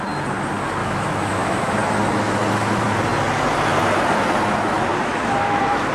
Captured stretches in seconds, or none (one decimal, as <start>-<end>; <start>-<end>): 0.0-0.8; 1.7-5.0